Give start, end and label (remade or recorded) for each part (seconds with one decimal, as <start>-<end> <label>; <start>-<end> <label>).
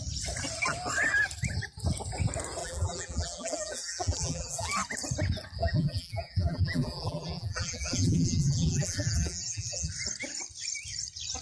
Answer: 0.0-2.6 recorded; 2.6-4.7 remade; 4.7-5.6 recorded; 5.6-9.9 remade; 9.9-11.4 recorded